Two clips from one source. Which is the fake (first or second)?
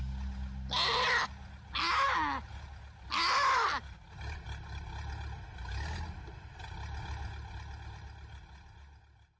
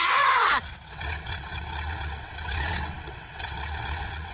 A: second